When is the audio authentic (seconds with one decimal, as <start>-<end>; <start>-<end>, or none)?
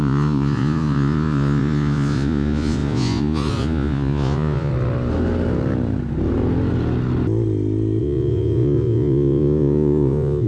4.7-8.0